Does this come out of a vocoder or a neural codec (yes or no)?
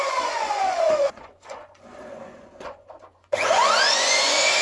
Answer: yes